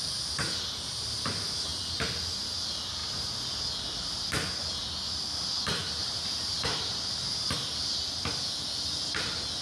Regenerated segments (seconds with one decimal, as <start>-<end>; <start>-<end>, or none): 6.0-7.5

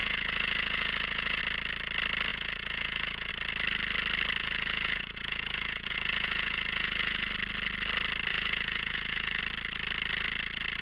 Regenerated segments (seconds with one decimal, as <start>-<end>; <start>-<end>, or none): 0.0-1.4; 2.3-3.3; 4.4-7.3; 8.3-9.4

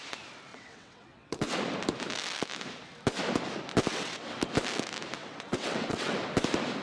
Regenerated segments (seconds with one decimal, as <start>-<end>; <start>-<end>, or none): 0.5-1.6; 3.9-4.4; 5.2-6.2

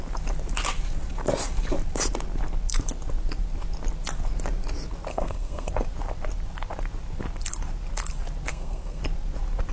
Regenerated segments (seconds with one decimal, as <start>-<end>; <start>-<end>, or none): 5.1-5.7; 8.5-9.0